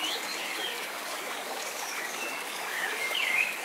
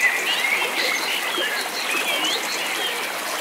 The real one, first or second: second